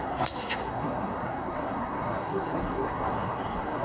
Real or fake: fake